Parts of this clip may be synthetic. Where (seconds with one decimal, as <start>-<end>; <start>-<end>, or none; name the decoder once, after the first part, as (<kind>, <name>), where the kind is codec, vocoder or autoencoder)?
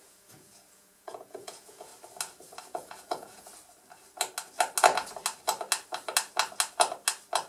0.0-1.9 (vocoder, Vocos); 2.6-3.5